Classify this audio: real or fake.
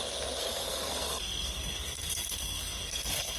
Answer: fake